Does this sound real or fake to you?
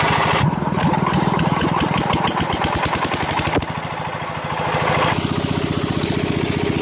real